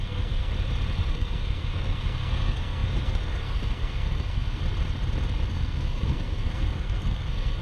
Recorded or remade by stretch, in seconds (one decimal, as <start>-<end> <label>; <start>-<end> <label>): 0.0-0.5 remade; 0.5-1.1 recorded; 1.1-4.6 remade; 4.6-5.5 recorded; 5.5-7.6 remade